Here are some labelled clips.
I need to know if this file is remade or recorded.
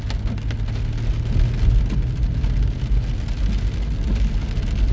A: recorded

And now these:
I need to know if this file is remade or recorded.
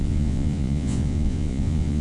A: remade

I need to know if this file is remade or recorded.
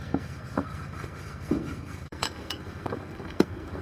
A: remade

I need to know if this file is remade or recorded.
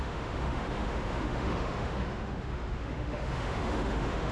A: remade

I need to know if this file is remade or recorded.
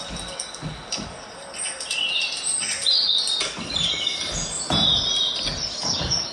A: recorded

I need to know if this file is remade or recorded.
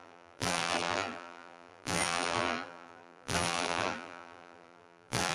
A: remade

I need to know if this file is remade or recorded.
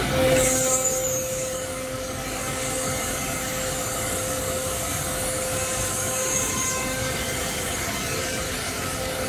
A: remade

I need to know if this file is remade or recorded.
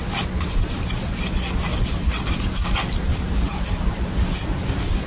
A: recorded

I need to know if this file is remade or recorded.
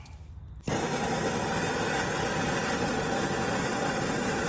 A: recorded